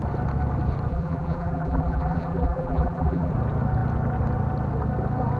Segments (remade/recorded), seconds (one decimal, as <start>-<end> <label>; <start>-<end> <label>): 0.0-0.9 recorded; 0.9-3.3 remade; 3.3-5.4 recorded

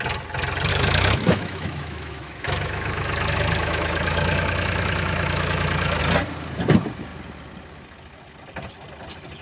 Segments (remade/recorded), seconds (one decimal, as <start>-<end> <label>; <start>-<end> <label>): 0.0-0.7 recorded; 0.7-6.0 remade; 6.0-9.4 recorded

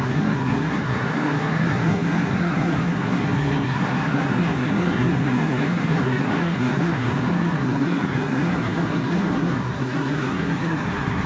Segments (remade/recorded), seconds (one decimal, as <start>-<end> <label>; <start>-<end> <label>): 0.0-11.3 remade

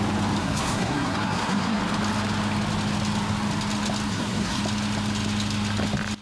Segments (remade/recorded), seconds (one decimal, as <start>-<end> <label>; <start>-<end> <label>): 0.0-0.4 recorded; 0.4-1.8 remade; 1.8-4.1 recorded; 4.1-4.6 remade; 4.6-6.2 recorded

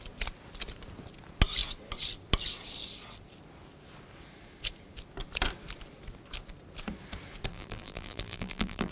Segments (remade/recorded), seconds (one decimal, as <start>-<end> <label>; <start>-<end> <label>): 0.0-7.5 recorded; 7.5-8.9 remade